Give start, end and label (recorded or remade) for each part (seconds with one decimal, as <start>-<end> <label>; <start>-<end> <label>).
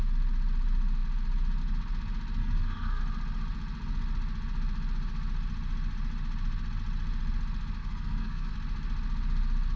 0.0-2.4 recorded; 2.4-3.0 remade; 3.0-7.8 recorded; 7.8-8.5 remade; 8.5-9.8 recorded